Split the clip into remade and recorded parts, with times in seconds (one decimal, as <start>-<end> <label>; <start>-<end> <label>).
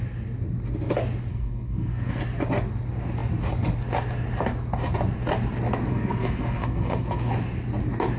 0.0-1.3 recorded; 1.3-2.2 remade; 2.2-5.9 recorded; 5.9-7.3 remade; 7.3-8.2 recorded